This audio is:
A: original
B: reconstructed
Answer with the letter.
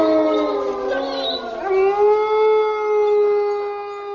A